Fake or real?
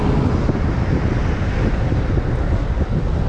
real